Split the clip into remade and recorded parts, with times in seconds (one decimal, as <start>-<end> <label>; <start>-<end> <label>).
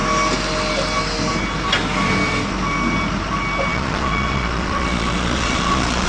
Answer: 0.0-3.7 recorded; 3.7-6.1 remade